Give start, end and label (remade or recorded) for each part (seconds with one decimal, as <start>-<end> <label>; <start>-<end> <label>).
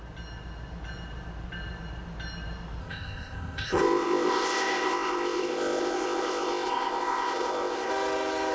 0.0-2.8 recorded; 2.8-7.9 remade; 7.9-8.5 recorded